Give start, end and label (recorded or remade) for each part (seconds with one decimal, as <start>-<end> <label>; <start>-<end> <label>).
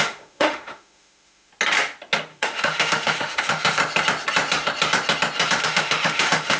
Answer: 0.0-1.5 remade; 1.5-2.3 recorded; 2.3-3.8 remade; 3.8-5.6 recorded; 5.6-6.6 remade